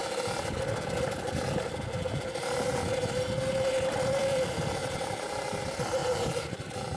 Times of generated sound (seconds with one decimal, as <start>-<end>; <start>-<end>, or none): 4.8-5.6; 6.0-7.0